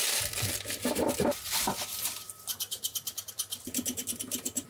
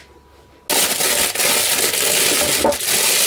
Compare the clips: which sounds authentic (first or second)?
second